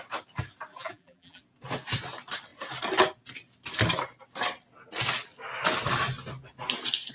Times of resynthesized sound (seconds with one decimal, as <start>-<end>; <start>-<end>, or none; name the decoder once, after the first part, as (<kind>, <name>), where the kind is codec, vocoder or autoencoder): 0.7-1.4 (vocoder, BigVGAN v2)